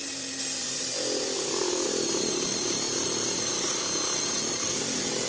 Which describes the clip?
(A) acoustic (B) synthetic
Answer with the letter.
A